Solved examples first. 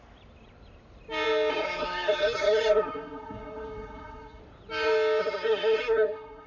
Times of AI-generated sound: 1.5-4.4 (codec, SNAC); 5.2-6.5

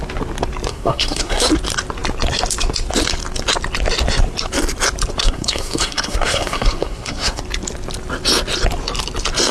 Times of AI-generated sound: 0.7-1.5 (codec, SNAC); 5.2-7.4

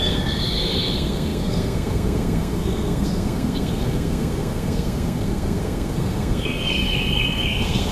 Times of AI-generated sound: 0.0-7.9 (codec, SNAC)

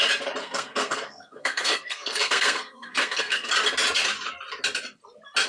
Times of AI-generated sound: 0.4-3.5 (codec, SNAC)

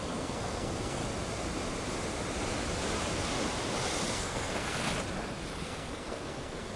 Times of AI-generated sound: 0.0-1.0 (codec, SNAC); 4.1-4.9; 5.6-6.8

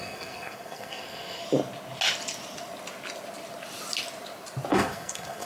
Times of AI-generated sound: 0.0-1.4 (codec, SNAC); 4.7-5.5